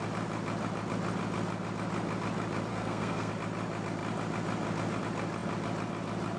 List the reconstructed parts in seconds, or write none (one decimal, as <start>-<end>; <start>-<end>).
2.7-3.3

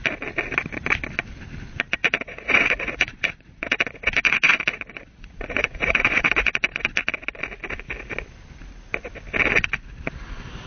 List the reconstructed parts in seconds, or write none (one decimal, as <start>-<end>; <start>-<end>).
2.0-6.6

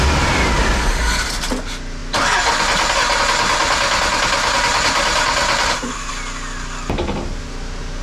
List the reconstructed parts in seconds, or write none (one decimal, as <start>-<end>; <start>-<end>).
5.4-6.1